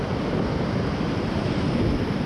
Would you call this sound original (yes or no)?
yes